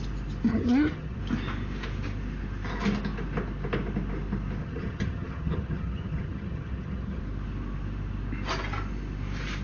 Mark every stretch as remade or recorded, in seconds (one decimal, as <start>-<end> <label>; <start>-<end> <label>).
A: 0.0-0.5 recorded; 0.5-1.2 remade; 1.2-4.6 recorded; 4.6-7.2 remade; 7.2-9.6 recorded